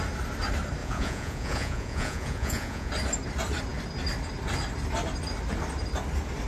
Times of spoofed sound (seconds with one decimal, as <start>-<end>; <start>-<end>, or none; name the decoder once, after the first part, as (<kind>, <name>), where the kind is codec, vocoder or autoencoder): 0.8-2.9 (vocoder, Vocos)